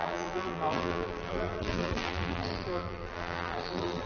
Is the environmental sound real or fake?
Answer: fake